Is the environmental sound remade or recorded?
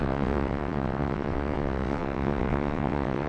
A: remade